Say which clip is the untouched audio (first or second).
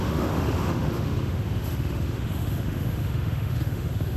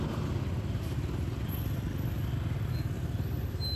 second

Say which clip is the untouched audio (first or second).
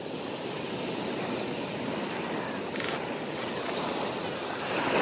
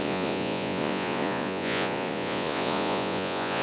first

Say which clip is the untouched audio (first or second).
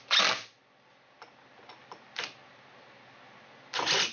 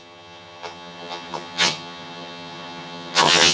first